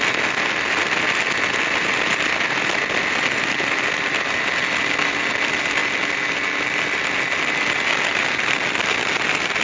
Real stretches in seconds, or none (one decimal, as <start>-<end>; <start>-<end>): 0.0-9.6